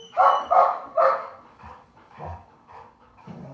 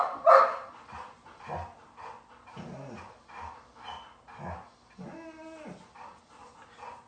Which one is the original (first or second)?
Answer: second